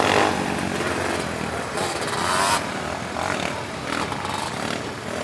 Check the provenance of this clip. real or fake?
real